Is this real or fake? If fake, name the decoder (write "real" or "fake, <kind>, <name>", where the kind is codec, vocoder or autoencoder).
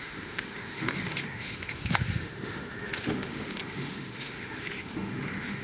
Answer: fake, autoencoder, DAC-VAE